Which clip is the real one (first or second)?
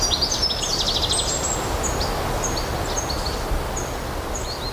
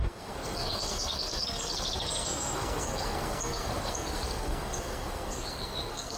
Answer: first